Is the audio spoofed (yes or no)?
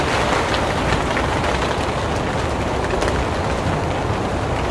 no